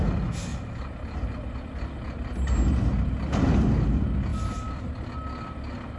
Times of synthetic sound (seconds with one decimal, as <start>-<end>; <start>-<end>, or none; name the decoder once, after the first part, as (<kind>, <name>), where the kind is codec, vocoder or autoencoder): none